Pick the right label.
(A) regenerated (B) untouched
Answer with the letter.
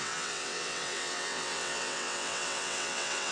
A